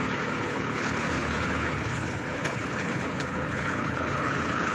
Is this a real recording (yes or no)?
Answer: no